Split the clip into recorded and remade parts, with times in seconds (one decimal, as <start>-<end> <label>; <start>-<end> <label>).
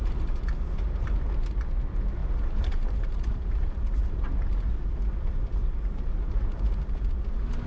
0.0-2.2 recorded; 2.2-4.7 remade; 4.7-5.6 recorded; 5.6-7.1 remade; 7.1-7.7 recorded